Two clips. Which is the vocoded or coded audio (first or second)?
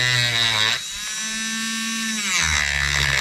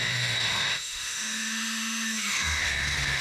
second